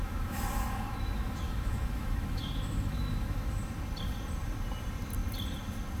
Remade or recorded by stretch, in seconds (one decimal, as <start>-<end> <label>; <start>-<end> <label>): 0.0-3.6 remade; 3.6-6.0 recorded